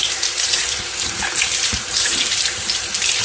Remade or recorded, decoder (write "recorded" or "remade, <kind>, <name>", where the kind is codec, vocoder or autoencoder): remade, vocoder, BigVGAN v2